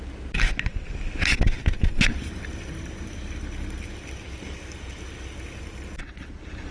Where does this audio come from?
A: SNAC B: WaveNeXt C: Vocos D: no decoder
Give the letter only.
D